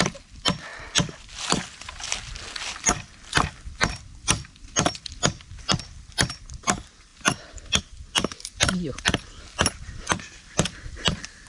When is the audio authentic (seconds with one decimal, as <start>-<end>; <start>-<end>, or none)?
0.7-2.6